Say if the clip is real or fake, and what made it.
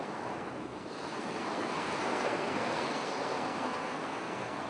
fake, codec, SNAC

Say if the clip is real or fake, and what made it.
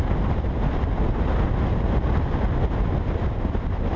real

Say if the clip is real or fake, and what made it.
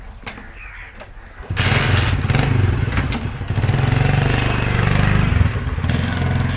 real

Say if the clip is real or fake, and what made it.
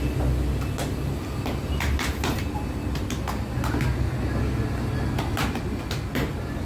real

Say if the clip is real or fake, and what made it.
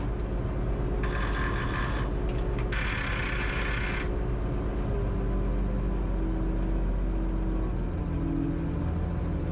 real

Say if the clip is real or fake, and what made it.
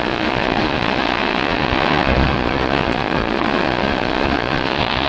fake, vocoder, Vocos